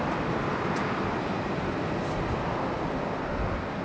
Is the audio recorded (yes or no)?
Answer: yes